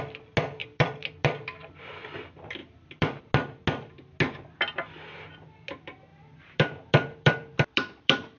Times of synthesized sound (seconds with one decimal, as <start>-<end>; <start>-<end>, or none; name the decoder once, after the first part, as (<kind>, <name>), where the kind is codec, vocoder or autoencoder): 0.6-1.7 (vocoder, BigVGAN v2); 2.6-3.2; 6.1-8.4